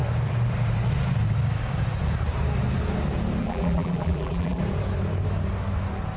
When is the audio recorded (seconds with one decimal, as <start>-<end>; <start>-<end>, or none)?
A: 0.0-3.4; 4.6-6.2